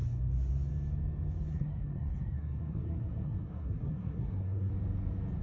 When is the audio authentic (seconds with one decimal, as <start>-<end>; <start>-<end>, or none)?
0.0-1.5; 4.7-5.4